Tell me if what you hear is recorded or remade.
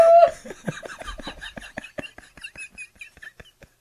recorded